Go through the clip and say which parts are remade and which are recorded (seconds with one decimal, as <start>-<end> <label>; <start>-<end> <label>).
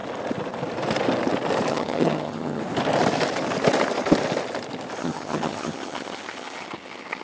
0.0-1.7 recorded; 1.7-2.6 remade; 2.6-5.0 recorded; 5.0-7.2 remade